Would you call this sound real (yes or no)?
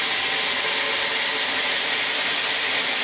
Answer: yes